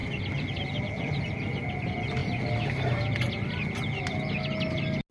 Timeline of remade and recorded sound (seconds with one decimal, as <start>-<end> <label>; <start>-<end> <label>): 0.0-1.7 remade; 1.7-5.1 recorded